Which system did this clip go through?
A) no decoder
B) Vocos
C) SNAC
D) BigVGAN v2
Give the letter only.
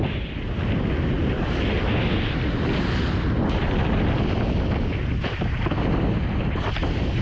A